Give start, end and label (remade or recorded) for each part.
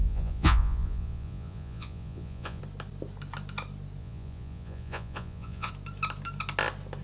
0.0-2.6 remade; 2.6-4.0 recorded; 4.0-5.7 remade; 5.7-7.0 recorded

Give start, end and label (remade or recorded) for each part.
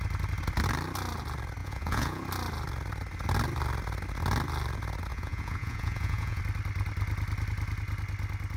0.0-1.6 recorded; 1.6-2.2 remade; 2.2-5.1 recorded; 5.1-6.4 remade; 6.4-8.6 recorded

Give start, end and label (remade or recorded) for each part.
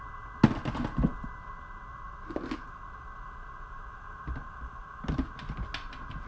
0.0-6.3 recorded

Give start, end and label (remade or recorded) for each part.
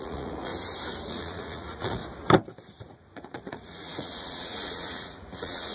0.0-0.5 remade; 0.5-1.1 recorded; 1.1-2.0 remade; 2.0-2.9 recorded; 2.9-5.7 remade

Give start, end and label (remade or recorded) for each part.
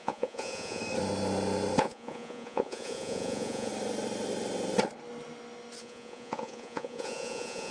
0.0-0.8 remade; 0.8-1.8 recorded; 1.8-3.7 remade; 3.7-5.8 recorded; 5.8-7.7 remade